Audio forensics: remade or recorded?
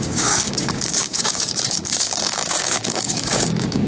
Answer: remade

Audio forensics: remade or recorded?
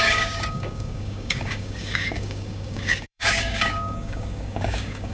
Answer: remade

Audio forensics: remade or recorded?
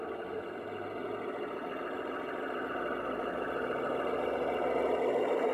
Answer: recorded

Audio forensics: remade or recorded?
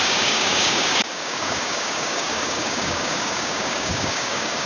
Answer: remade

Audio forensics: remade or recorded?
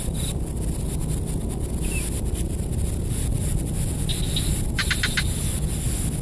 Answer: recorded